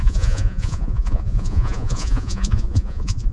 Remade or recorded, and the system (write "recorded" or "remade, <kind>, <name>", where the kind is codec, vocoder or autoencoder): remade, vocoder, Vocos